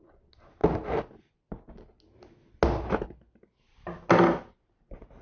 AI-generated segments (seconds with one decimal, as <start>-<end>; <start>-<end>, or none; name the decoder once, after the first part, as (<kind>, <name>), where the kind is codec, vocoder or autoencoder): none